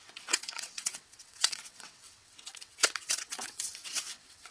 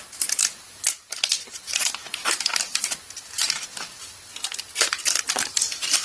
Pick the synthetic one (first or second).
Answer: first